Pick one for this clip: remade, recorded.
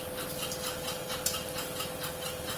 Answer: recorded